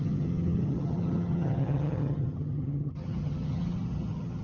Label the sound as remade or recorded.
remade